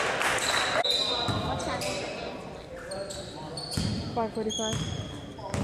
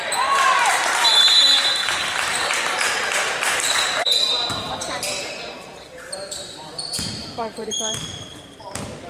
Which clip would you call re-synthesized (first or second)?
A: second